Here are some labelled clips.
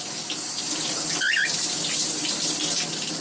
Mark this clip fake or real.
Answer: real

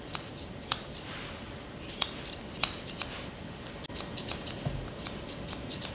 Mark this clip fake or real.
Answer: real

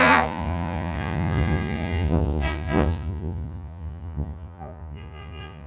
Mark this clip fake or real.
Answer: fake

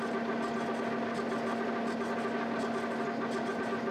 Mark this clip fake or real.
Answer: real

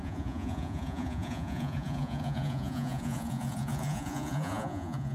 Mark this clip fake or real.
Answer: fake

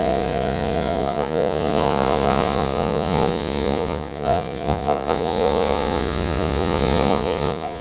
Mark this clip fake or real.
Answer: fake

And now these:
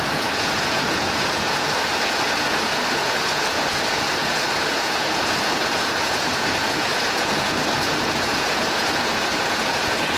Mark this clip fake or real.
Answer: fake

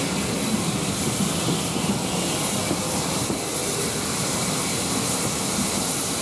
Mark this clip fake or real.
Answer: real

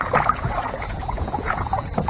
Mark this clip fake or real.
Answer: fake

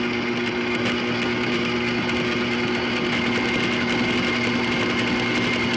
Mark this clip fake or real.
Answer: real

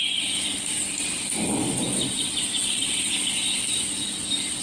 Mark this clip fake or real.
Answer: real